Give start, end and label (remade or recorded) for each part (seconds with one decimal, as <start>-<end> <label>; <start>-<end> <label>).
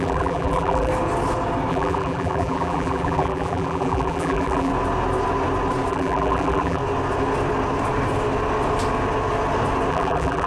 0.0-0.9 remade; 0.9-1.7 recorded; 1.7-4.7 remade; 4.7-5.9 recorded; 5.9-6.8 remade; 6.8-9.9 recorded; 9.9-10.5 remade